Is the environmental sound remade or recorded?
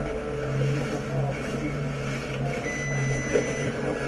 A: recorded